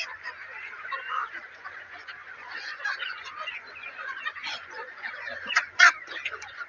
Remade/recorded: remade